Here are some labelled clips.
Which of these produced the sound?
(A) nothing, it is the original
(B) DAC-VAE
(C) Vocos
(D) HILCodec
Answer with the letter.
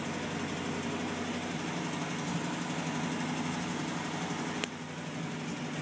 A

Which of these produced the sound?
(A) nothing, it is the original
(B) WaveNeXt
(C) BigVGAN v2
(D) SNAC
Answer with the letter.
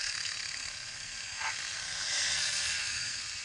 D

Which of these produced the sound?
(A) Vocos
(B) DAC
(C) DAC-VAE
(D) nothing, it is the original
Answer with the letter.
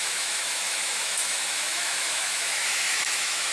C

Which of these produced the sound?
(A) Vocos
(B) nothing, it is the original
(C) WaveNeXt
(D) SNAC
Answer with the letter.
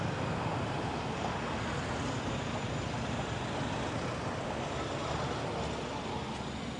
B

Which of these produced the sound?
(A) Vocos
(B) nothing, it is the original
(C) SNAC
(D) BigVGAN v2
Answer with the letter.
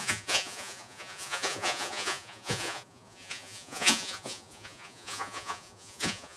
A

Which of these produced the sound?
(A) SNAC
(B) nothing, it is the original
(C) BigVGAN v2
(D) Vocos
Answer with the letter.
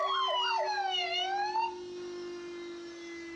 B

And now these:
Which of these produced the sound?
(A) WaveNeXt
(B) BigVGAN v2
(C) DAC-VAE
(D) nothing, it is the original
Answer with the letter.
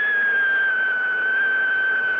D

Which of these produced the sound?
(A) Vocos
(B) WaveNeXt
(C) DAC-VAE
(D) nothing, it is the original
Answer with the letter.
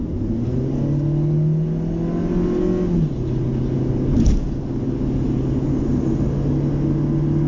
D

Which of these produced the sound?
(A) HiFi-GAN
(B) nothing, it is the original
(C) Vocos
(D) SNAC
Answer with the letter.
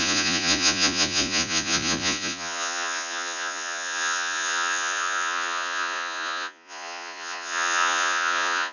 C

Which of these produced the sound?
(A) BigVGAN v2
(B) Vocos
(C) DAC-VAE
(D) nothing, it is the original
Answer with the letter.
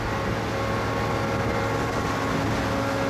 D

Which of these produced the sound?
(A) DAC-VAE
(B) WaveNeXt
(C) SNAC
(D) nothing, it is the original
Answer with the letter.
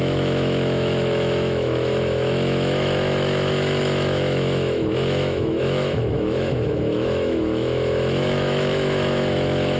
A